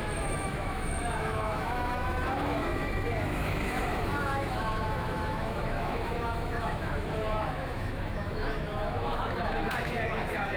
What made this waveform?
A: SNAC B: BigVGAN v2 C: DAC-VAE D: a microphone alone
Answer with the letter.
C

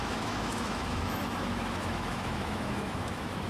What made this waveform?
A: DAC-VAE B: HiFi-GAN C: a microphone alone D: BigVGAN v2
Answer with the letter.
A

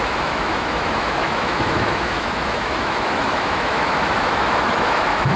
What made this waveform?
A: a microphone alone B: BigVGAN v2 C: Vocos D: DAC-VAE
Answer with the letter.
D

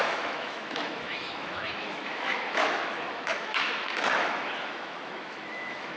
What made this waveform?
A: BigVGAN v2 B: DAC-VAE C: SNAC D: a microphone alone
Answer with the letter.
B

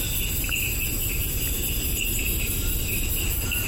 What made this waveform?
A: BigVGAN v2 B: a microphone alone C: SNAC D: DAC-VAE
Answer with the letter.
B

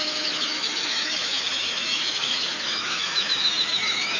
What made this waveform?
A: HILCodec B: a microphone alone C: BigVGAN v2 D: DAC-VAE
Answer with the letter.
D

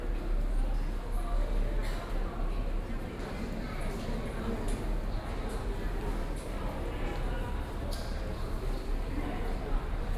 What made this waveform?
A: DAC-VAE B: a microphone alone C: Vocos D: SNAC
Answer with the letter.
B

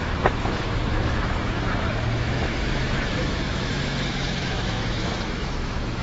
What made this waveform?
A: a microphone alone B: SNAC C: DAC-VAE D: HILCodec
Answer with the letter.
C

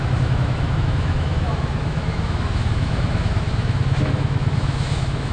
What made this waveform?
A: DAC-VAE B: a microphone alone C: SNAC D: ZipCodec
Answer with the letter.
A